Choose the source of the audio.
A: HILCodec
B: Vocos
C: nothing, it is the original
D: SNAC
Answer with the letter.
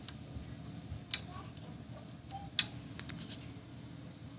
C